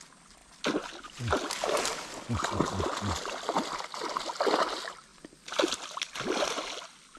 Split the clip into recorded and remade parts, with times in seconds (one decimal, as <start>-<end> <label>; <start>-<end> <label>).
0.0-7.2 recorded